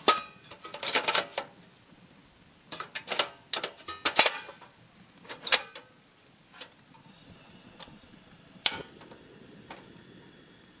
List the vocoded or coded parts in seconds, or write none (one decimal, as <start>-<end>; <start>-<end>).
none